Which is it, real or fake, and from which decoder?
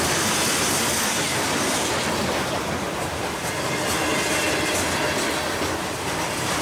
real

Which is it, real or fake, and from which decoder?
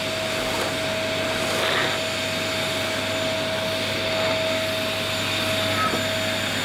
real